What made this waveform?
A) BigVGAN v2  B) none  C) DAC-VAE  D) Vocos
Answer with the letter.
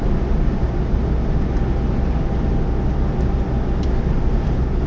B